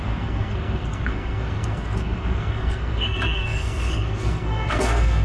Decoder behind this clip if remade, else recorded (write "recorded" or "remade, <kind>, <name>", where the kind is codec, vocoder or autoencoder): remade, codec, SNAC